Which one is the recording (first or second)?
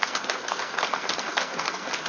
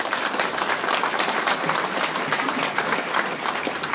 second